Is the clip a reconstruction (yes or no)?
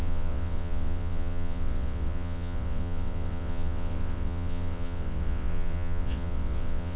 yes